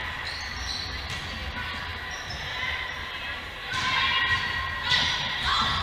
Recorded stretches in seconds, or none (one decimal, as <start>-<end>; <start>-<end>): 0.0-1.9

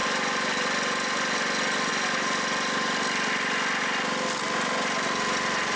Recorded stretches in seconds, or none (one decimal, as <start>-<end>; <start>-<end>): 0.0-5.8